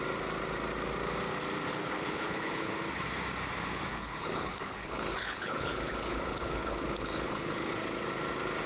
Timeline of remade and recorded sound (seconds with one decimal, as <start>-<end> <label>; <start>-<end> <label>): 0.0-1.7 recorded; 1.7-2.7 remade; 2.7-3.9 recorded; 3.9-7.7 remade; 7.7-8.7 recorded